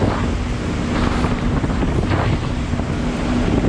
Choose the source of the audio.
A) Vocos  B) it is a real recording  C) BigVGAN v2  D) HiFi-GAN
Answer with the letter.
B